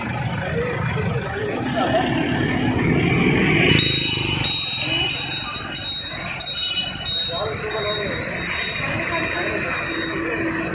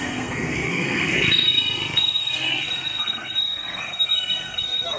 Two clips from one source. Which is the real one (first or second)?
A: first